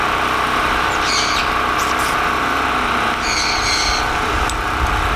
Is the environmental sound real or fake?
real